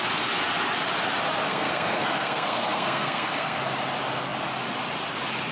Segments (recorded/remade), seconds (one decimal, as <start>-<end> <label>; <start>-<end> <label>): 0.0-1.5 recorded; 1.5-3.6 remade; 3.6-5.5 recorded

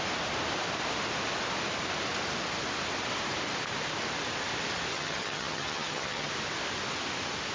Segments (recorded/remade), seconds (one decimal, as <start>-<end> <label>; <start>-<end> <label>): 0.0-4.9 recorded; 4.9-6.3 remade; 6.3-7.5 recorded

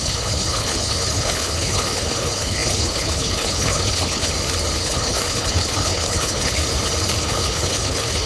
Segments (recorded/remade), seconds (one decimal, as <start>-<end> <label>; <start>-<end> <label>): 0.0-4.3 remade; 4.3-4.8 recorded; 4.8-6.6 remade; 6.6-7.2 recorded; 7.2-8.3 remade

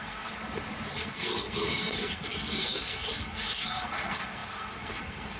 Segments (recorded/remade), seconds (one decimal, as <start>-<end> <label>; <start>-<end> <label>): 0.0-0.4 remade; 0.4-1.0 recorded; 1.0-5.4 remade

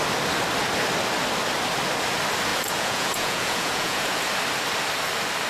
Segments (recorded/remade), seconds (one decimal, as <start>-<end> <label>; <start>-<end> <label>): 0.0-2.5 recorded; 2.5-4.2 remade; 4.2-5.5 recorded

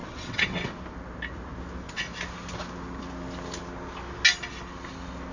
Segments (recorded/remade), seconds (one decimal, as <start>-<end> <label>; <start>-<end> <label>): 0.0-0.7 remade; 0.7-5.3 recorded